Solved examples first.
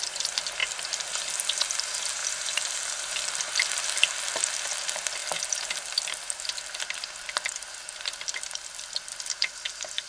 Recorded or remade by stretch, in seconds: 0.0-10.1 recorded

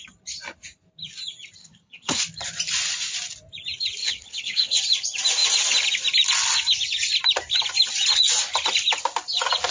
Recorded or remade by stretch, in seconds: 0.0-1.6 recorded; 1.6-2.2 remade; 2.2-4.0 recorded; 4.0-4.8 remade; 4.8-9.7 recorded

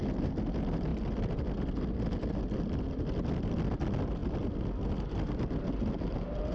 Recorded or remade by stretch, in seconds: 0.0-4.2 recorded; 4.2-5.1 remade; 5.1-6.5 recorded

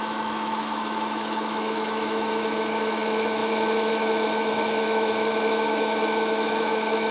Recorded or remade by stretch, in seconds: 0.0-7.1 remade

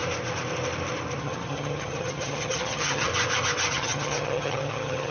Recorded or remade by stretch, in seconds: 0.0-1.2 recorded; 1.2-3.1 remade; 3.1-3.7 recorded; 3.7-5.1 remade